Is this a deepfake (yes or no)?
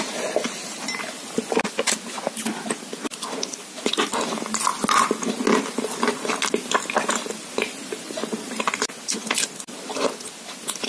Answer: no